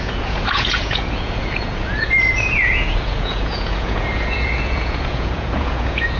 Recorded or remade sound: remade